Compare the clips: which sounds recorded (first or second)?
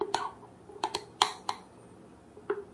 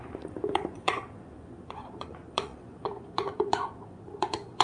first